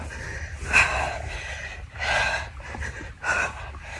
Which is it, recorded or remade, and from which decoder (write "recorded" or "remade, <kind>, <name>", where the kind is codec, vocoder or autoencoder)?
recorded